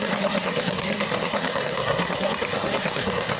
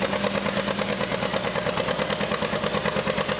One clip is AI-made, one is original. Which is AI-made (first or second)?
first